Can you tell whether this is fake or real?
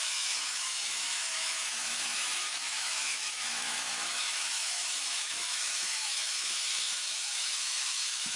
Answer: fake